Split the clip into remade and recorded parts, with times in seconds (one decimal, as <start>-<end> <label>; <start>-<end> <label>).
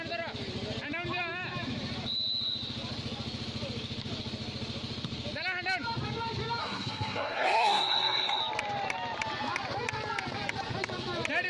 0.0-6.6 recorded; 6.6-8.4 remade; 8.4-11.5 recorded